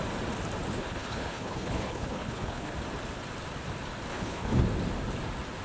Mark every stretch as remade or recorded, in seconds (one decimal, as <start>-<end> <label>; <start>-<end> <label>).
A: 0.0-0.7 recorded; 0.7-2.7 remade; 2.7-4.1 recorded; 4.1-4.6 remade; 4.6-5.6 recorded